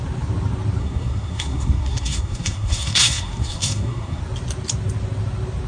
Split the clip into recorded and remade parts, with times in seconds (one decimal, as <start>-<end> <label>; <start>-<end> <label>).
0.0-0.8 recorded; 0.8-4.2 remade; 4.2-5.7 recorded